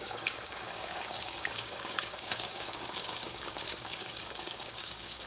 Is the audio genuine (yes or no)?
no